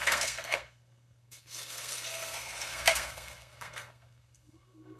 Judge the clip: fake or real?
fake